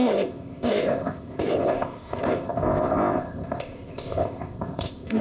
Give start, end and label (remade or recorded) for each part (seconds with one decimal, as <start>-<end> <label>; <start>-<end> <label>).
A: 0.0-5.2 remade